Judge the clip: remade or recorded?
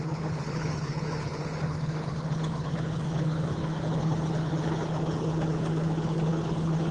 remade